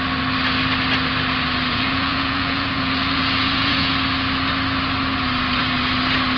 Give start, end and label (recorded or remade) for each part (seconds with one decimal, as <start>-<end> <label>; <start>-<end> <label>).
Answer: 0.0-1.7 recorded; 1.7-3.9 remade; 3.9-6.4 recorded